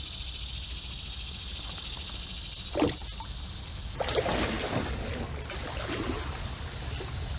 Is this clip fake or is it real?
real